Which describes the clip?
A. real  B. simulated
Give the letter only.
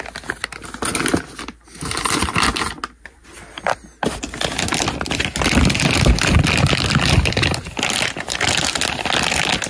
A